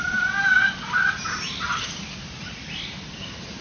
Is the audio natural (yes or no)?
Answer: yes